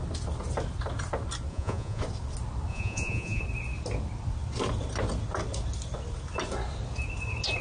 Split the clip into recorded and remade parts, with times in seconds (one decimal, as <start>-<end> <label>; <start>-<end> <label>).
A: 0.0-1.5 recorded; 1.5-2.0 remade; 2.0-2.7 recorded; 2.7-3.4 remade; 3.4-7.6 recorded